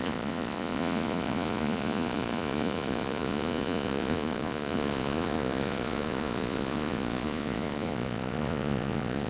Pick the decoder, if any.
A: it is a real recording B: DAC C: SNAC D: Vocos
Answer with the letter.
D